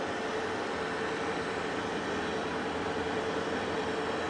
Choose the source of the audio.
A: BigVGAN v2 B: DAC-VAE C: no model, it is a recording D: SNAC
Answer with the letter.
C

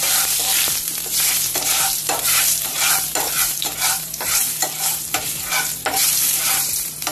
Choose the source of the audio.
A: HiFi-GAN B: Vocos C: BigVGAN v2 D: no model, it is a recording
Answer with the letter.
C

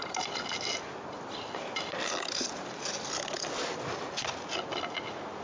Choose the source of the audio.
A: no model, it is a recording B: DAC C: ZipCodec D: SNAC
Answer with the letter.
A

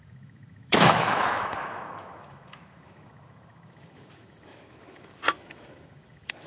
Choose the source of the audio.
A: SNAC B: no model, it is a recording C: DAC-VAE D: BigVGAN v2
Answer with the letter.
C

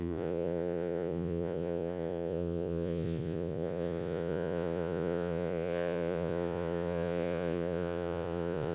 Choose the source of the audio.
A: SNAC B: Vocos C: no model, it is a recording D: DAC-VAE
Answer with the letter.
B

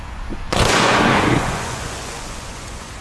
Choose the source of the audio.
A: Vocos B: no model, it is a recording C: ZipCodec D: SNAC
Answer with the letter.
A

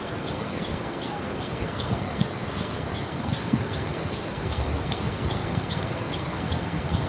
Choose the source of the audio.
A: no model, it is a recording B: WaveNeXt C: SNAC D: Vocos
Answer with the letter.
C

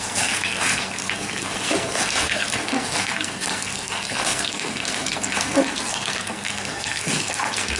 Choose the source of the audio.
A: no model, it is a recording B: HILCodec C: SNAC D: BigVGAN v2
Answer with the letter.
C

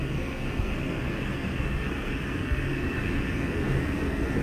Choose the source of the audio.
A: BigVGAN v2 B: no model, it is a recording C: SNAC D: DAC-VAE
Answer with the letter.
C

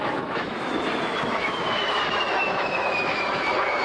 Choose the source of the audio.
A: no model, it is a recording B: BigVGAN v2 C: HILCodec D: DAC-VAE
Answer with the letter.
D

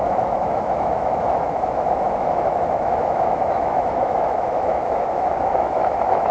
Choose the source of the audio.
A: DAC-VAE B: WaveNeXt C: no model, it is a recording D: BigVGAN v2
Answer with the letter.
A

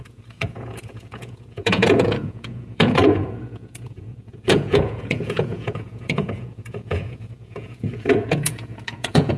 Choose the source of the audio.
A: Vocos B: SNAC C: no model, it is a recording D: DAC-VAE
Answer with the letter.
A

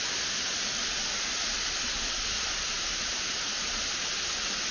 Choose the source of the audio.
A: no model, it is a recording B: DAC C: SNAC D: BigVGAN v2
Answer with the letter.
A